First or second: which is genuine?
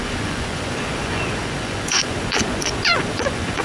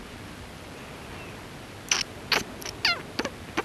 second